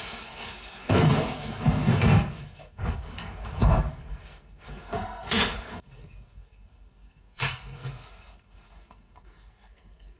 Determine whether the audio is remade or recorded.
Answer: remade